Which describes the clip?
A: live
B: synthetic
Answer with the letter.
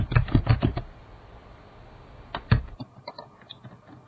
A